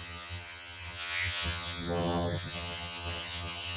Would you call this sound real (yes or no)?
no